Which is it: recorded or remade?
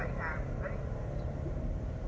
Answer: recorded